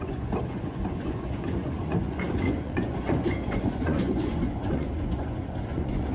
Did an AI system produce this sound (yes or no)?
yes